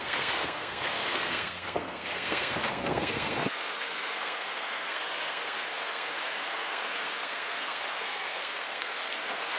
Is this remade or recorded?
remade